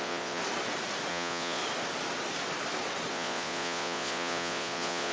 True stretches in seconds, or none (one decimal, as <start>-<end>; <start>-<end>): 0.4-1.1; 1.6-3.1